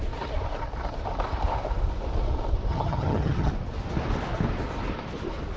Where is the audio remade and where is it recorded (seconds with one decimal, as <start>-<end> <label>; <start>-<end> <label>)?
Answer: 0.0-2.7 recorded; 2.7-3.5 remade; 3.5-5.6 recorded